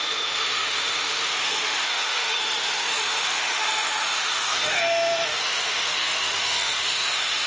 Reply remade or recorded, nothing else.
remade